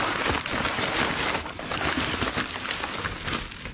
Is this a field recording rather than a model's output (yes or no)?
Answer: yes